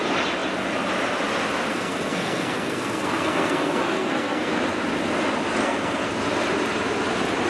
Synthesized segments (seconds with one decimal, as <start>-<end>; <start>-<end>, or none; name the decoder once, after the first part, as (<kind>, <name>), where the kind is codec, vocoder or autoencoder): 1.7-4.5 (codec, SNAC); 5.6-6.1